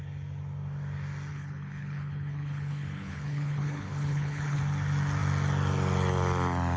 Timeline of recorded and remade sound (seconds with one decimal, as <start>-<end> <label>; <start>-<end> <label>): 0.0-1.3 recorded; 1.3-4.6 remade; 4.6-6.8 recorded